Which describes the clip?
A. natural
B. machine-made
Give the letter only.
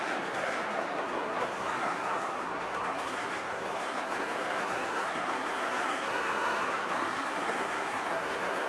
B